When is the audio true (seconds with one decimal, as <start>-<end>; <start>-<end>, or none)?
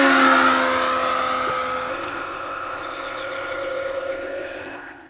0.0-1.9